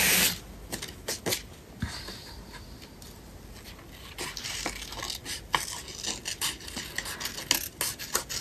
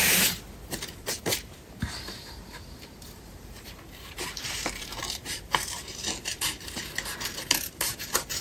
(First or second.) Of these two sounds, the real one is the first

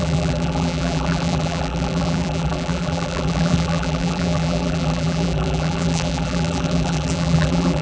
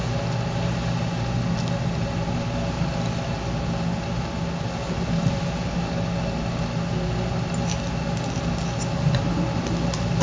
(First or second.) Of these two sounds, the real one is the second